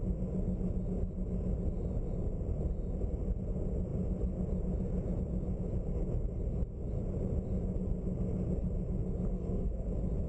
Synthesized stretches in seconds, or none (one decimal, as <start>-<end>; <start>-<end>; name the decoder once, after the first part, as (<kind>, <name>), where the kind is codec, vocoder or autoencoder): 9.3-9.9 (codec, SNAC)